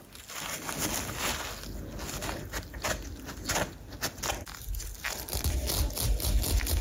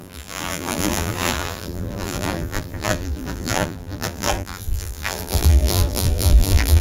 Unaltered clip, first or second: first